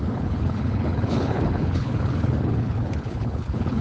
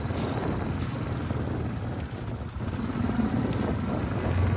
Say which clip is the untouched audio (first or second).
second